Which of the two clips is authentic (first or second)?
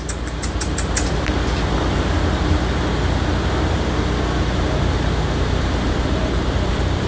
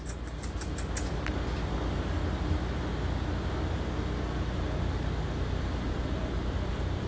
second